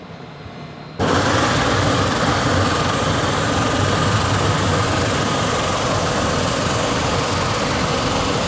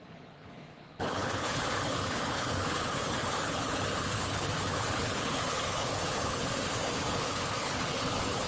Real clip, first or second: first